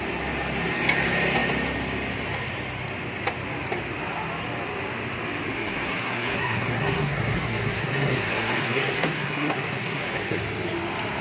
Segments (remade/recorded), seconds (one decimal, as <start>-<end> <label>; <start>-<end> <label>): 0.0-5.5 recorded; 5.5-10.4 remade; 10.4-11.2 recorded